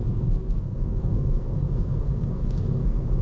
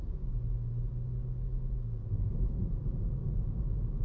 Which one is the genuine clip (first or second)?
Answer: second